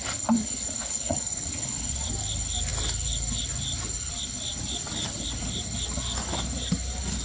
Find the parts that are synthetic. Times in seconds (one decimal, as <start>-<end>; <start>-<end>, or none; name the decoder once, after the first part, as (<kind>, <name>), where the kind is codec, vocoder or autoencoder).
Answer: 0.4-2.1 (vocoder, Vocos)

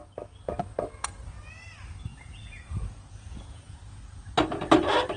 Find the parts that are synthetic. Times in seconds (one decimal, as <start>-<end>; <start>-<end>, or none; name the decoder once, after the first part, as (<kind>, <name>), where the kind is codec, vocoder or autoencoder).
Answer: 2.1-4.0 (vocoder, Vocos)

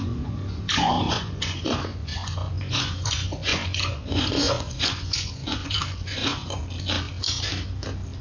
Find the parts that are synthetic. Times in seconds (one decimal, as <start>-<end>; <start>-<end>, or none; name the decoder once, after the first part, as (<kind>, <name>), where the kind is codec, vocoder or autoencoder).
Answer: 0.0-6.6 (vocoder, Vocos)

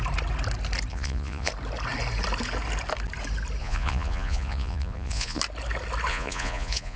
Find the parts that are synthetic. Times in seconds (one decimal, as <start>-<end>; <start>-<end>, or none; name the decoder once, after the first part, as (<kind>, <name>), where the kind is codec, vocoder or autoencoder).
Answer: 0.9-1.5 (vocoder, Vocos); 3.6-5.4; 6.1-7.0